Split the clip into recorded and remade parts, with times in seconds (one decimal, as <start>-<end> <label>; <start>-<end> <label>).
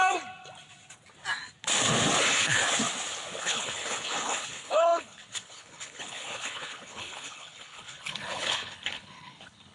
0.0-2.2 recorded; 2.2-2.6 remade; 2.6-3.4 recorded; 3.4-9.7 remade